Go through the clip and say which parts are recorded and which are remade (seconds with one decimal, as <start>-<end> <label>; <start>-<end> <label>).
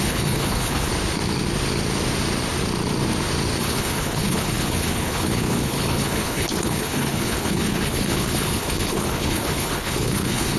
0.0-0.9 remade; 0.9-3.6 recorded; 3.6-10.6 remade